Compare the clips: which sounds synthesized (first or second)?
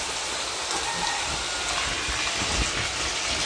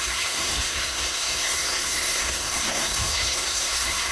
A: second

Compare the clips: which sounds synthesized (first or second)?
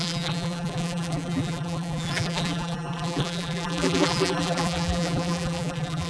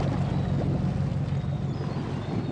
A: first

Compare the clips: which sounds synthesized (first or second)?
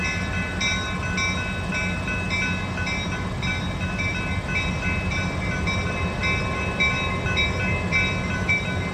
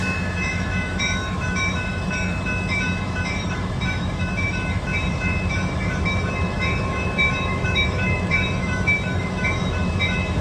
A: second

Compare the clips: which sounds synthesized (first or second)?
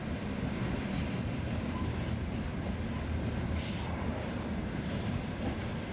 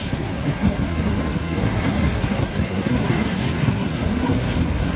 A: second